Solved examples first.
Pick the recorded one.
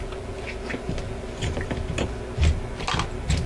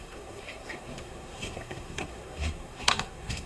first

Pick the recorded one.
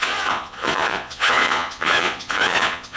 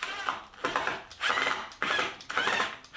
second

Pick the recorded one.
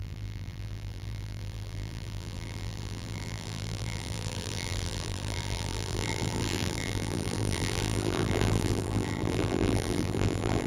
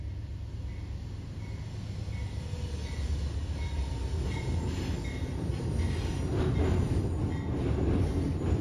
second